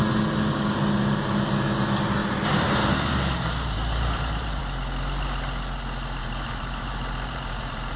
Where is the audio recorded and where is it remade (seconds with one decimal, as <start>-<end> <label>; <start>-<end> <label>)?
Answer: 0.0-2.2 recorded; 2.2-4.6 remade; 4.6-6.2 recorded; 6.2-8.0 remade